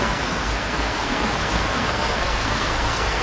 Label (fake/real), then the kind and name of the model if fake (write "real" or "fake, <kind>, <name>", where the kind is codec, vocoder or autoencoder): fake, codec, SNAC